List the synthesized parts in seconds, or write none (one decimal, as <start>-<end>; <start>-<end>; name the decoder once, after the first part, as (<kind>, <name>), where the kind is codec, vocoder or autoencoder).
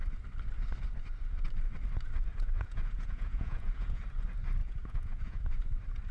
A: 2.3-4.0 (vocoder, Vocos); 4.6-5.5